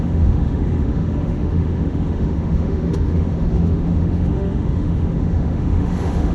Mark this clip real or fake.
fake